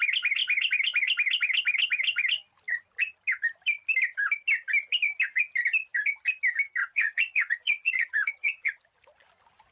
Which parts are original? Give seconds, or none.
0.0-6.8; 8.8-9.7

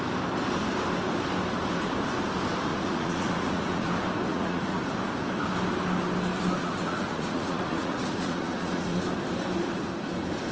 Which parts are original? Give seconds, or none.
0.0-2.7; 3.9-4.3; 4.8-6.6; 9.0-10.5

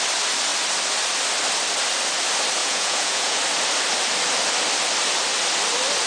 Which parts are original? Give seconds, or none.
0.0-2.6; 3.4-6.1

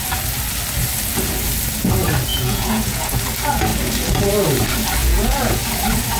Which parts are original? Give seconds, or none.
0.0-2.3; 3.2-5.0; 5.6-6.2

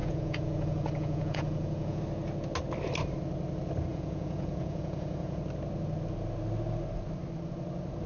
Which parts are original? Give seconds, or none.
2.0-3.9; 5.4-8.1